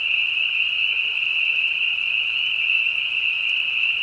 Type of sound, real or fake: real